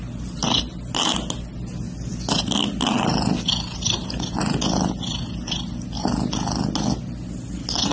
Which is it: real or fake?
real